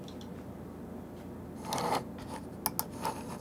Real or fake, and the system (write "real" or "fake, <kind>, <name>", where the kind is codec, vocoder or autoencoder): real